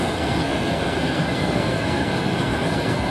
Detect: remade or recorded remade